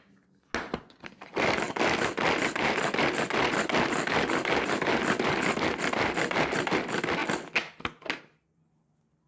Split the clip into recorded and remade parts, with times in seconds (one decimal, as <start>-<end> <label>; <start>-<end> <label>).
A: 0.0-1.3 recorded; 1.3-3.0 remade; 3.0-9.3 recorded